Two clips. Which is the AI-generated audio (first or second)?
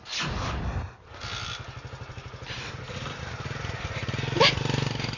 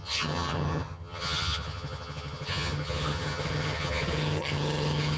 second